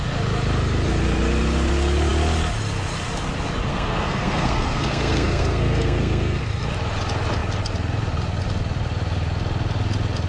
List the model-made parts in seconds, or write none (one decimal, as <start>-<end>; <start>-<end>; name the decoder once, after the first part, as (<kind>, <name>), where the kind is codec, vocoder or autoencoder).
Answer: 3.7-6.4 (codec, SNAC)